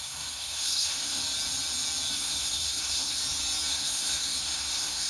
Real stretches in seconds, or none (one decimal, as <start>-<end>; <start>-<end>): 1.2-2.1; 3.2-3.7